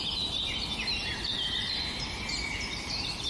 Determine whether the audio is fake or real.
fake